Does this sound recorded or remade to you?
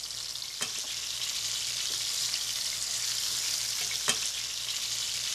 recorded